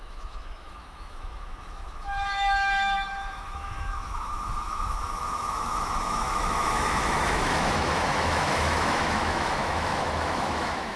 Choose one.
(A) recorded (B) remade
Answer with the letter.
B